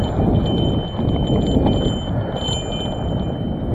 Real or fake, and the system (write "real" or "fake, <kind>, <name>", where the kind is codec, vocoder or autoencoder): real